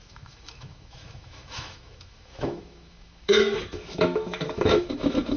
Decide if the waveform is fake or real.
fake